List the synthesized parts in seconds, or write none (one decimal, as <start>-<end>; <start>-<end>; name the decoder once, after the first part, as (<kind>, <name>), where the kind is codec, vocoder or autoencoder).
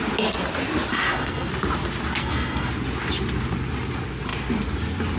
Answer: 0.9-1.5 (codec, SNAC); 2.2-2.7